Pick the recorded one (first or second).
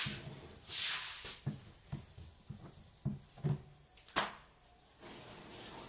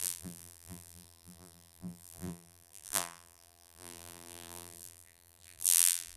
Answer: first